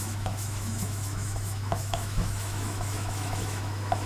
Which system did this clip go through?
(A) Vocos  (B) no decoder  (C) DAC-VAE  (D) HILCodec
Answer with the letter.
C